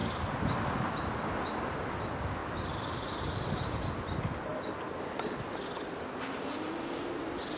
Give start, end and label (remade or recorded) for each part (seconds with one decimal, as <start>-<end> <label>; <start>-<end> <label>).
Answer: 0.0-0.9 remade; 0.9-2.4 recorded; 2.4-3.6 remade; 3.6-7.6 recorded